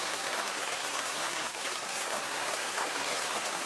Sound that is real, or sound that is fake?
fake